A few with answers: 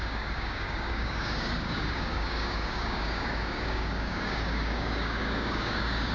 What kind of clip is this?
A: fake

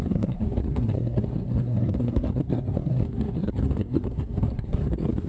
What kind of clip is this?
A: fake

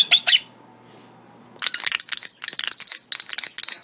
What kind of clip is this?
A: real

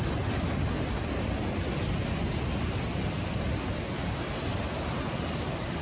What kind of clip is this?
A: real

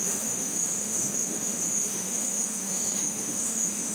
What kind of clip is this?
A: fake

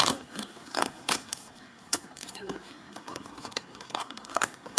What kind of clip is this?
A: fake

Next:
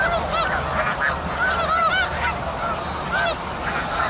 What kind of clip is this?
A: real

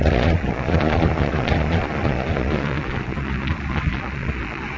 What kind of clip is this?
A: fake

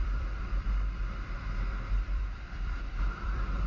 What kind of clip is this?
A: fake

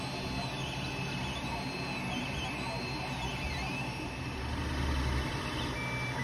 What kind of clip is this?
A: real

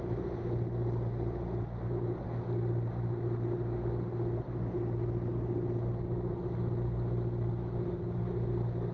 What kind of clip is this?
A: real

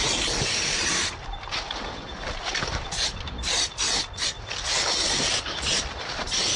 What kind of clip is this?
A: real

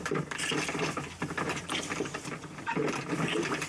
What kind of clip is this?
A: fake